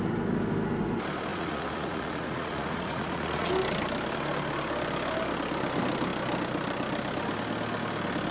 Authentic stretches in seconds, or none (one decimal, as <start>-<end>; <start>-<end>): 0.0-1.3; 3.5-8.3